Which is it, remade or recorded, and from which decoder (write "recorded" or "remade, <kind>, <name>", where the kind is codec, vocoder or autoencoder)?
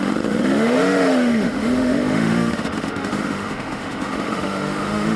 remade, autoencoder, DAC-VAE